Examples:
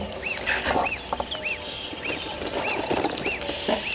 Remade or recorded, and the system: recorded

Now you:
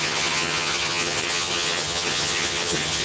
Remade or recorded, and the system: remade, vocoder, HiFi-GAN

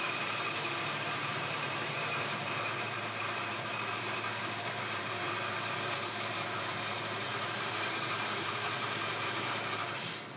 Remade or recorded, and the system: remade, vocoder, BigVGAN v2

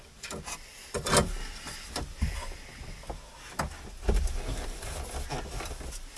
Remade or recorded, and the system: recorded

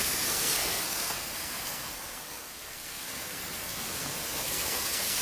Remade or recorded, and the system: remade, codec, SNAC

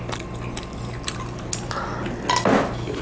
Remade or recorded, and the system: recorded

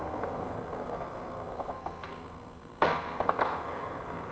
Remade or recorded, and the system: remade, codec, SNAC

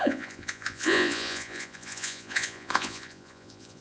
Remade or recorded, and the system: remade, vocoder, Vocos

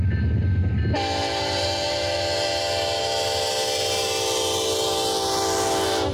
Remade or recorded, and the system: recorded